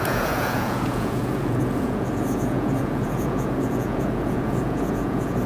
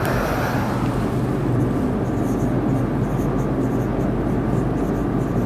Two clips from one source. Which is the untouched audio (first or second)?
second